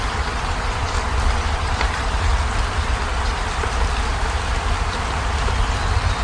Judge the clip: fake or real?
fake